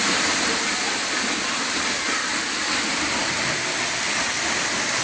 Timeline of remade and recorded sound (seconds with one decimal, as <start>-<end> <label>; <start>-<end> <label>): 0.0-5.0 recorded